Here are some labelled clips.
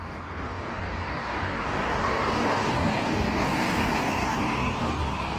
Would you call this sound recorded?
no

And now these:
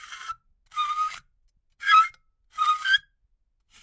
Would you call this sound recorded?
yes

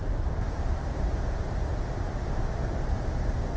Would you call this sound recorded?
yes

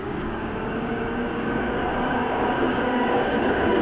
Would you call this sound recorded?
no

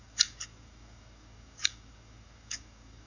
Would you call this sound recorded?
no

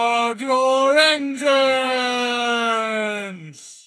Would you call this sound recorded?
no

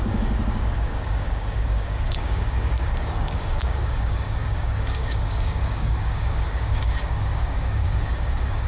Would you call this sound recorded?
no